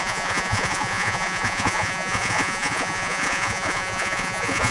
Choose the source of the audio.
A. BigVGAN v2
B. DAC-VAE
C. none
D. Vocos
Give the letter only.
D